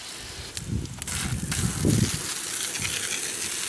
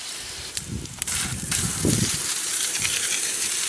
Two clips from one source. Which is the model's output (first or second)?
second